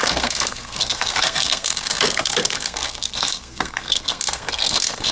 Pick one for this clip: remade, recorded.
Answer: remade